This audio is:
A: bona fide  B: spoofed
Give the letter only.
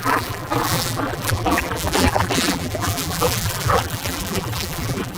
B